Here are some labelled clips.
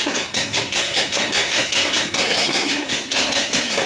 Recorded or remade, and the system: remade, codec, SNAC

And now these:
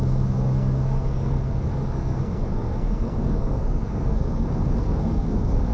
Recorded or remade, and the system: remade, codec, SNAC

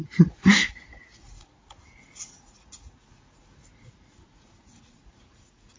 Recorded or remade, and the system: remade, vocoder, Vocos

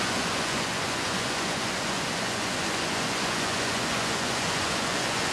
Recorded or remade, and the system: remade, vocoder, Vocos